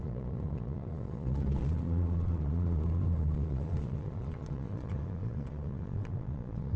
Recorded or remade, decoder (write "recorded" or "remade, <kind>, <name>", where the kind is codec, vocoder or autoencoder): remade, vocoder, Vocos